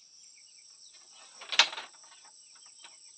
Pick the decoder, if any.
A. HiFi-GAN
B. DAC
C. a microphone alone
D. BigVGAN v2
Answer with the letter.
C